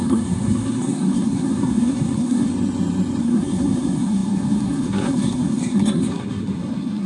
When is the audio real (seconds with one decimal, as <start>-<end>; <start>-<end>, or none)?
2.5-3.2